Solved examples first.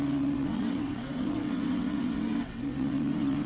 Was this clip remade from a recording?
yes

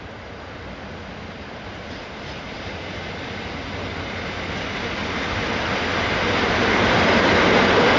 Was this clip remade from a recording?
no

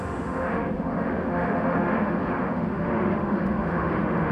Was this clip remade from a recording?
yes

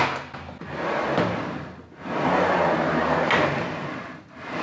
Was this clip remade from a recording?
no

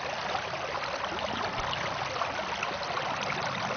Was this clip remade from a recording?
no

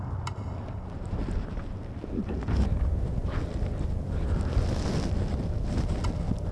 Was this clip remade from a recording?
no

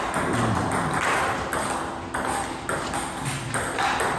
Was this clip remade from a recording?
no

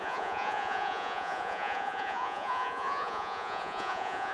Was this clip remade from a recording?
yes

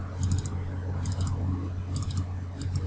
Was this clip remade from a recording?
no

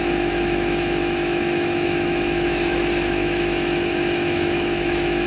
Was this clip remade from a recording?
yes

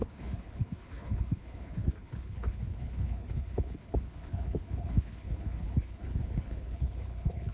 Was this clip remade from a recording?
yes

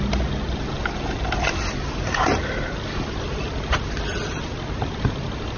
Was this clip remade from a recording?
no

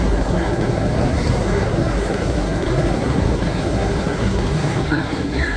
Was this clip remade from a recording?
yes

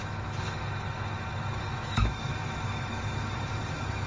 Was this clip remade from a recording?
yes